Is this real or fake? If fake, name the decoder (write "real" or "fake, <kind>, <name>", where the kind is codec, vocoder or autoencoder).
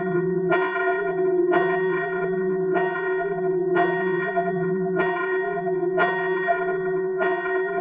fake, vocoder, Vocos